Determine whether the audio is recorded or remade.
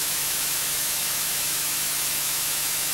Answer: remade